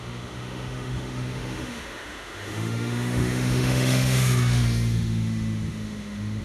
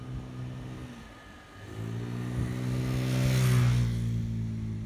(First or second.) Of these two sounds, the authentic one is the second